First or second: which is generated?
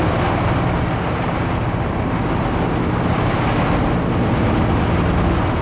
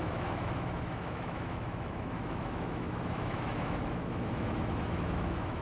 second